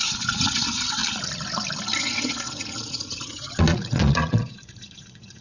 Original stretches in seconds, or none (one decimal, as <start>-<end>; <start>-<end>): 1.0-2.0